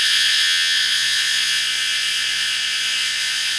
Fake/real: fake